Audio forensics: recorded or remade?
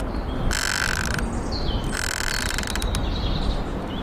recorded